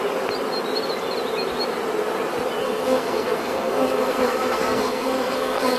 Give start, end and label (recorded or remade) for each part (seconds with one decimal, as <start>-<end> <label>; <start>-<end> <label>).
0.0-2.6 recorded; 2.6-5.8 remade